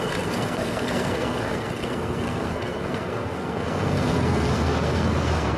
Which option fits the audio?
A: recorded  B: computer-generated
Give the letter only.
B